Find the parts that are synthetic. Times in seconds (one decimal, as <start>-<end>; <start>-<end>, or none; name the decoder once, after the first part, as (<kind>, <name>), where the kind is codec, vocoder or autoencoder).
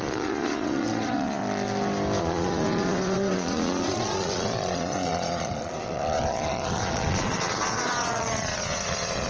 0.0-1.4 (vocoder, Vocos); 2.2-9.3